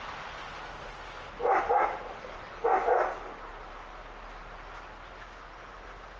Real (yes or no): yes